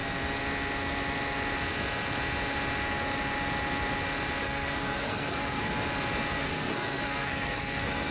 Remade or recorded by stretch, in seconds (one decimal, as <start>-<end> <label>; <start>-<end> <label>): 0.0-4.4 recorded; 4.4-5.7 remade; 5.7-6.3 recorded; 6.3-8.1 remade

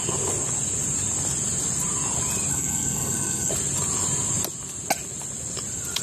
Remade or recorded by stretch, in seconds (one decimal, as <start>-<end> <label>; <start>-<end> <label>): 0.0-2.5 recorded; 2.5-3.5 remade; 3.5-6.0 recorded